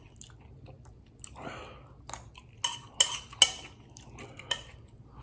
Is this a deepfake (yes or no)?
no